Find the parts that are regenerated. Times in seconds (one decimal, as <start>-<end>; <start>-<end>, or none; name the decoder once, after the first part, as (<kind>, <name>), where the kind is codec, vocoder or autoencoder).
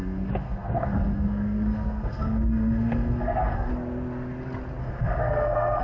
0.0-3.7 (codec, SNAC); 4.8-5.8